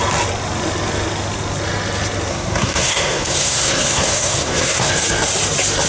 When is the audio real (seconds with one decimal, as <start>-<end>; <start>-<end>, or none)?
0.0-2.3; 4.9-5.9